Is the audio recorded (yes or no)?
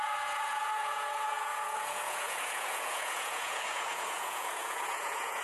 no